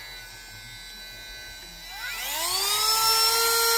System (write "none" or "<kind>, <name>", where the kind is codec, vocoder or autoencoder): none